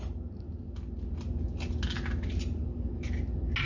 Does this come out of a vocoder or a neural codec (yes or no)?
no